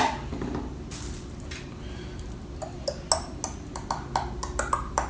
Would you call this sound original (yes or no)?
yes